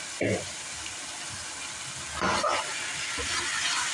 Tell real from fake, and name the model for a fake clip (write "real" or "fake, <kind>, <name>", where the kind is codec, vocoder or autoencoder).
real